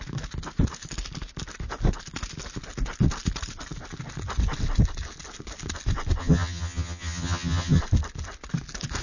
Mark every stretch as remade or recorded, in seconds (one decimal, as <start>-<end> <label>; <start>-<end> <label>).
0.0-6.2 recorded; 6.2-7.8 remade; 7.8-9.0 recorded